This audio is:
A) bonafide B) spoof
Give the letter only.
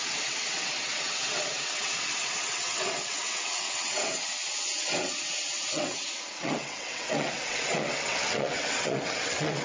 B